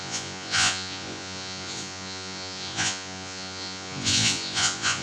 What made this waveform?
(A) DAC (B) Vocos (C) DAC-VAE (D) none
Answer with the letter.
B